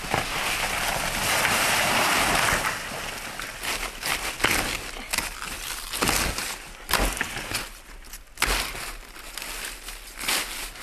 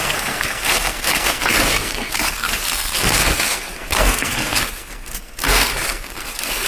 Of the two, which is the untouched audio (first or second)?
first